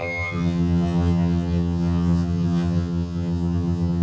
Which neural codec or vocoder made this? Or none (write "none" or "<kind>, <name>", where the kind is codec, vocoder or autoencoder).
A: vocoder, HiFi-GAN